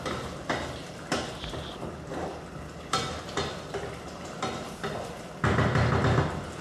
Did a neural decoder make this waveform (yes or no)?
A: no